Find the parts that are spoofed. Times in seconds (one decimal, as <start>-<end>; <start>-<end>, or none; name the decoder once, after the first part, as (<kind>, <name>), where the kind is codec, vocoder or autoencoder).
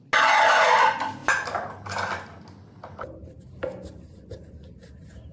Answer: none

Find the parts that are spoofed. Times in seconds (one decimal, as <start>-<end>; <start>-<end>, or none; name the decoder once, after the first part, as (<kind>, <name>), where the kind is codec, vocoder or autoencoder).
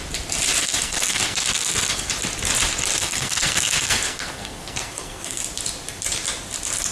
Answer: 0.6-2.1 (codec, SNAC); 3.0-5.4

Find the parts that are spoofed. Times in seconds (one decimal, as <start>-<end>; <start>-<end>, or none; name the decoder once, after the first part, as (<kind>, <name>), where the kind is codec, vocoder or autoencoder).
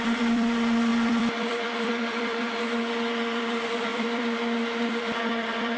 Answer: 0.0-5.8 (vocoder, BigVGAN v2)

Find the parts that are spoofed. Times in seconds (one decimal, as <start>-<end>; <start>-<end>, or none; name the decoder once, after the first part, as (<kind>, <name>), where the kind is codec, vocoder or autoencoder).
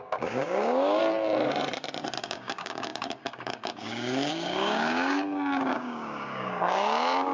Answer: 0.0-1.0 (codec, DAC); 2.2-7.3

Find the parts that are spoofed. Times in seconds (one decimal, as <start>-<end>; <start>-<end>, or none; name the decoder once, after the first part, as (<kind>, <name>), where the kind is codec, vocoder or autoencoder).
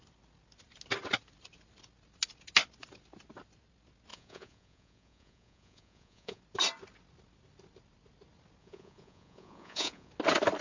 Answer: 4.1-6.4 (vocoder, Vocos); 8.6-10.1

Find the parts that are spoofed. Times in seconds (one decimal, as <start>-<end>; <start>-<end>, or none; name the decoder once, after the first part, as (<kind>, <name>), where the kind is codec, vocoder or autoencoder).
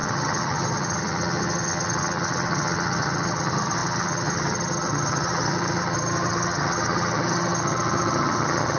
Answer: 0.0-8.8 (vocoder, HiFi-GAN)